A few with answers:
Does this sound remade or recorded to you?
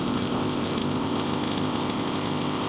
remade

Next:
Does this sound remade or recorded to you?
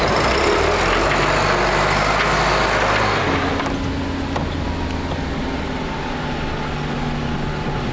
recorded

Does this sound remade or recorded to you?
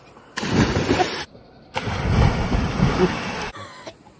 recorded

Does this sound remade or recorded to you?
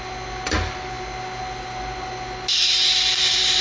recorded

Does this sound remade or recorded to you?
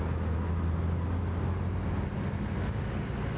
recorded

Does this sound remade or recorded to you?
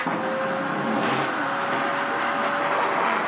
recorded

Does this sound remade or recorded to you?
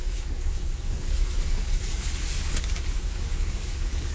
remade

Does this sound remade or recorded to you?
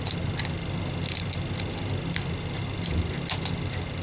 recorded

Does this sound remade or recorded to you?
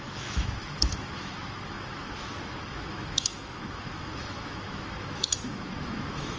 remade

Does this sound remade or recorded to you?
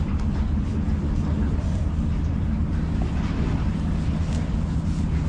recorded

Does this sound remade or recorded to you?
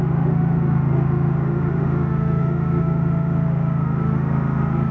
remade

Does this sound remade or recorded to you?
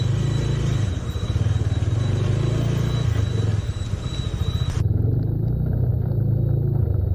recorded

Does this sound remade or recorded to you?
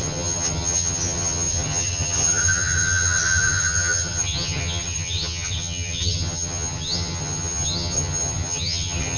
remade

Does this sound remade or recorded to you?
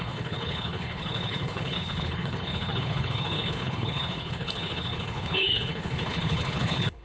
remade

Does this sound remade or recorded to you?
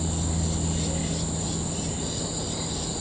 recorded